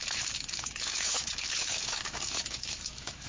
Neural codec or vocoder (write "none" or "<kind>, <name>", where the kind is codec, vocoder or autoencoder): autoencoder, DAC-VAE